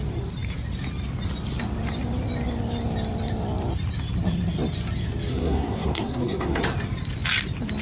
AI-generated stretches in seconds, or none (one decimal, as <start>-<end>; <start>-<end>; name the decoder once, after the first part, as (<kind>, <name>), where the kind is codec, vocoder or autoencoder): 5.3-6.6 (codec, SNAC)